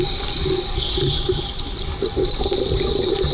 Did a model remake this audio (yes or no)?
no